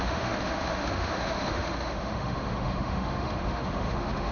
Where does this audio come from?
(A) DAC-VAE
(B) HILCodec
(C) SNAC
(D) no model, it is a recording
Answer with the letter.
A